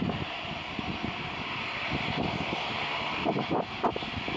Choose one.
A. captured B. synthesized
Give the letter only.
A